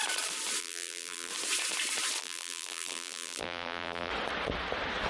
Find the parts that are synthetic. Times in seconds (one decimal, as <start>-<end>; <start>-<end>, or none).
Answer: 0.6-1.3; 2.2-4.1

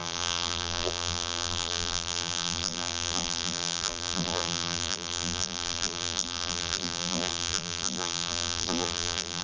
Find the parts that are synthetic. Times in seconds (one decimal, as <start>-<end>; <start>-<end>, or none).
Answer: 0.0-9.4

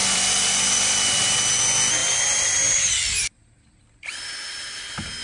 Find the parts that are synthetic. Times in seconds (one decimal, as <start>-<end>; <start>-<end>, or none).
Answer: 0.0-1.4; 2.0-4.8

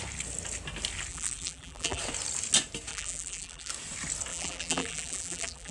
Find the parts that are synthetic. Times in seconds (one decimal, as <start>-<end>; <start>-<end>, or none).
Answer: 1.1-2.0; 2.9-3.7; 4.3-5.7

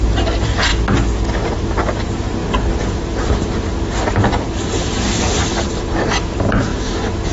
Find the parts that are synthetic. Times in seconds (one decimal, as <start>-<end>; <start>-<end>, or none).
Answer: 0.0-0.7; 2.0-2.4; 3.0-3.7; 4.3-7.3